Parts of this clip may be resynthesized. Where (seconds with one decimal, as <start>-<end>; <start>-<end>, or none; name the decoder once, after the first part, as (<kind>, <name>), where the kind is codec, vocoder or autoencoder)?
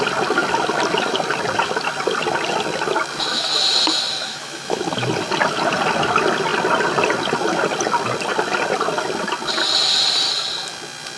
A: 4.1-4.8 (autoencoder, DAC-VAE)